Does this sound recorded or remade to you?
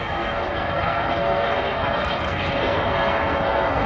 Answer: remade